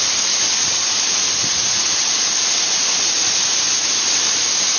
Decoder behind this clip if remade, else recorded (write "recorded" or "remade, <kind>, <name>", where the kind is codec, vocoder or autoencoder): recorded